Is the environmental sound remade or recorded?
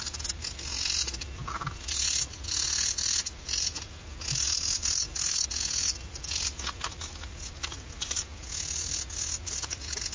recorded